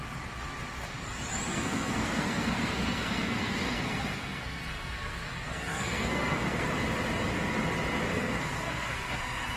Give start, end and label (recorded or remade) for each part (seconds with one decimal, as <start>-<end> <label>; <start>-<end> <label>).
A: 0.0-1.5 recorded; 1.5-6.7 remade; 6.7-8.1 recorded; 8.1-9.6 remade